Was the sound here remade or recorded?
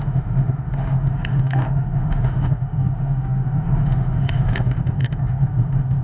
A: remade